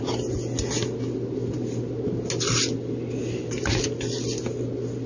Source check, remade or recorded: recorded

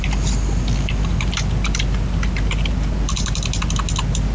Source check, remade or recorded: recorded